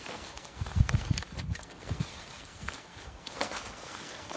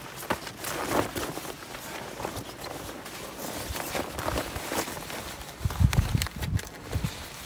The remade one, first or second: first